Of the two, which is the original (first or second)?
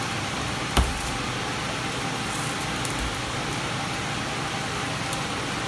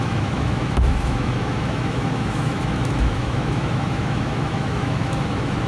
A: first